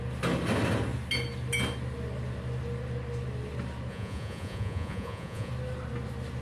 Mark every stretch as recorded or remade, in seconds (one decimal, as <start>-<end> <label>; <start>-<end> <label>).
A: 0.0-3.9 recorded; 3.9-5.5 remade; 5.5-6.4 recorded